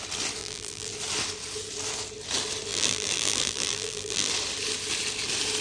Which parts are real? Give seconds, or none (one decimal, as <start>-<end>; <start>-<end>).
0.0-0.4; 0.9-2.7; 4.3-5.6

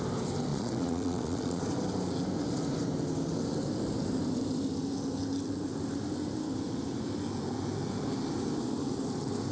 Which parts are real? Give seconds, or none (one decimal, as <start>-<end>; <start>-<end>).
0.0-0.5; 1.6-9.5

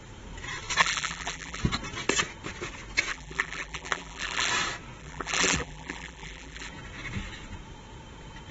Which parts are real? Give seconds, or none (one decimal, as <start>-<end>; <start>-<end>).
0.0-0.8; 1.6-3.1; 4.5-5.0; 6.7-8.5

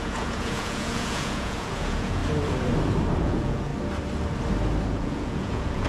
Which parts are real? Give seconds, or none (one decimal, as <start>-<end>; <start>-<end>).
2.2-3.2; 3.7-4.9

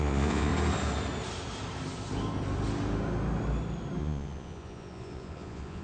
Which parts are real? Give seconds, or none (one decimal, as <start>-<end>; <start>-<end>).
0.5-4.0

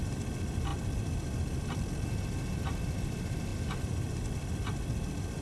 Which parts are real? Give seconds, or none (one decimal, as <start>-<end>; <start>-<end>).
0.0-5.4

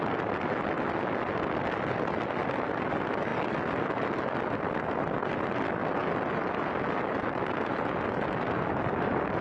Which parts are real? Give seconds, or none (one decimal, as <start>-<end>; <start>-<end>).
0.0-9.4

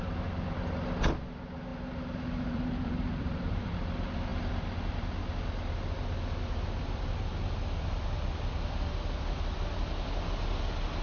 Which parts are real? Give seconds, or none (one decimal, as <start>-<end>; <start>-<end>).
0.0-1.7; 3.7-11.0